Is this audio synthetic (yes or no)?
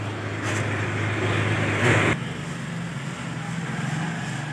no